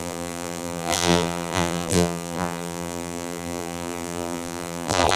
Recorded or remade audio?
remade